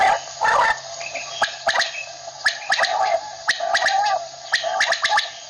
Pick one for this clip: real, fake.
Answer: real